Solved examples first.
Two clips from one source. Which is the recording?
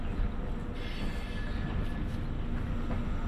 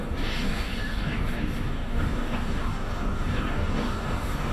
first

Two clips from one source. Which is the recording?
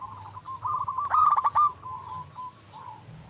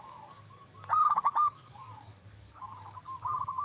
first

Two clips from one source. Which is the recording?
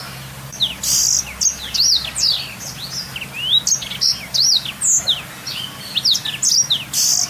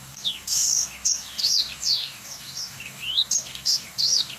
first